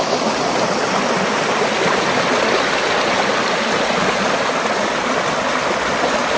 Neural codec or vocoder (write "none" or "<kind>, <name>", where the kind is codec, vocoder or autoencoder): none